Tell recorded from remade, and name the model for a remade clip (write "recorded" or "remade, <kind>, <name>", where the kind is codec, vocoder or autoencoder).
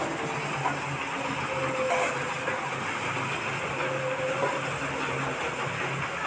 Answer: recorded